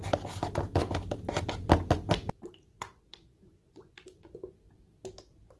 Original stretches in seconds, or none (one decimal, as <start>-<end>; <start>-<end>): 0.0-2.7; 4.5-5.6